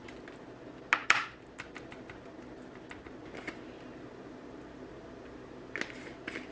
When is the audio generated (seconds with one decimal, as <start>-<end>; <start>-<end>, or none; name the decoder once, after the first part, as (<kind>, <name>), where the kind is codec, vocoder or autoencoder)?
none